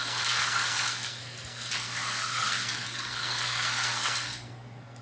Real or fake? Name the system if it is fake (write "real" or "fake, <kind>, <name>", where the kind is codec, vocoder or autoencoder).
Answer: fake, codec, SNAC